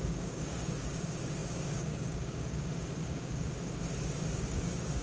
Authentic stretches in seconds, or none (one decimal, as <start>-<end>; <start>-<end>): 3.5-4.3